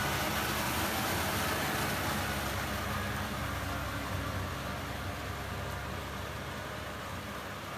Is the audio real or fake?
real